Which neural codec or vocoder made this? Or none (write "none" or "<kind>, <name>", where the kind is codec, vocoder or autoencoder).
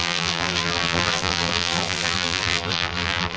vocoder, BigVGAN v2